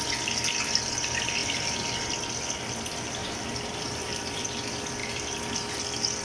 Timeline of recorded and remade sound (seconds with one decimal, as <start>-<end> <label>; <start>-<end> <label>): 0.0-3.2 recorded; 3.2-4.4 remade; 4.4-5.0 recorded; 5.0-5.8 remade; 5.8-6.2 recorded